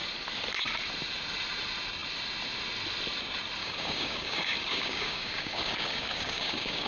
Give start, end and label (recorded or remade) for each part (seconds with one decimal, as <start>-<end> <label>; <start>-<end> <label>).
0.0-3.6 recorded; 3.6-6.9 remade